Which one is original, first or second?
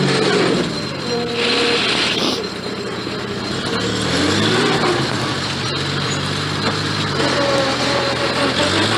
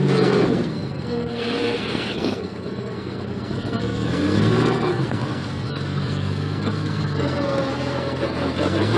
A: first